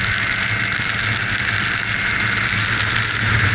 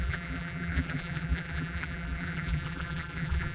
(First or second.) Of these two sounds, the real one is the first